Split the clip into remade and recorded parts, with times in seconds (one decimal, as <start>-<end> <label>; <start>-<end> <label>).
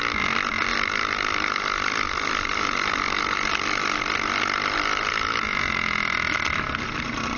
0.0-7.4 recorded